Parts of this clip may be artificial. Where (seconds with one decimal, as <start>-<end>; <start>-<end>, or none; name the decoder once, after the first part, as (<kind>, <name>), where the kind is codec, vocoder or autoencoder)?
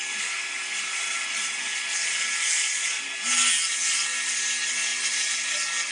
none